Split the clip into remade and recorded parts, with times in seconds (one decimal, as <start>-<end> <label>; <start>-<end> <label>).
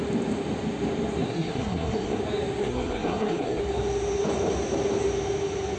0.0-1.3 recorded; 1.3-2.2 remade; 2.2-2.6 recorded; 2.6-3.6 remade; 3.6-5.8 recorded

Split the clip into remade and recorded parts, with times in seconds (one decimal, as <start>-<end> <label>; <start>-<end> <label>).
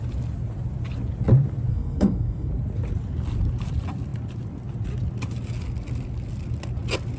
0.0-1.7 recorded; 1.7-2.5 remade; 2.5-7.2 recorded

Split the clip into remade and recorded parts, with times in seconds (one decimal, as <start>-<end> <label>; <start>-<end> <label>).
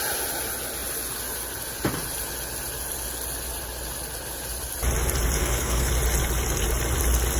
0.0-5.4 recorded; 5.4-5.9 remade; 5.9-7.4 recorded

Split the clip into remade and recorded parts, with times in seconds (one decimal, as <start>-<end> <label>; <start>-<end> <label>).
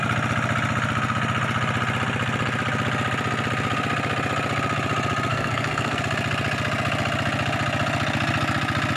0.0-5.3 recorded; 5.3-6.0 remade; 6.0-9.0 recorded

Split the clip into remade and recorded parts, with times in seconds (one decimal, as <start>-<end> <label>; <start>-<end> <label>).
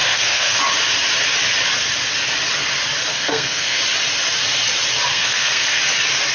0.0-0.6 remade; 0.6-3.1 recorded; 3.1-3.8 remade; 3.8-5.1 recorded; 5.1-5.8 remade; 5.8-6.3 recorded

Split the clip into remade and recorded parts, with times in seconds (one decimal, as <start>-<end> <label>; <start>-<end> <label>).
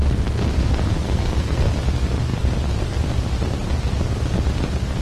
0.0-1.0 recorded; 1.0-1.7 remade; 1.7-5.0 recorded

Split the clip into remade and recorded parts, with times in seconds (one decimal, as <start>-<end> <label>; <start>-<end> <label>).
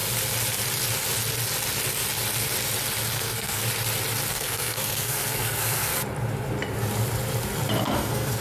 0.0-3.1 recorded; 3.1-3.6 remade; 3.6-4.3 recorded; 4.3-5.9 remade; 5.9-7.8 recorded; 7.8-8.4 remade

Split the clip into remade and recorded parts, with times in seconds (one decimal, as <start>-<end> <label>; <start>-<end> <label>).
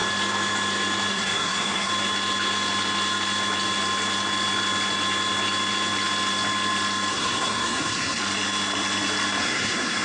0.0-1.1 recorded; 1.1-1.9 remade; 1.9-7.1 recorded; 7.1-8.2 remade; 8.2-9.4 recorded; 9.4-10.0 remade